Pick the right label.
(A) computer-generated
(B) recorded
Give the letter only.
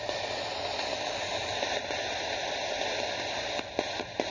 B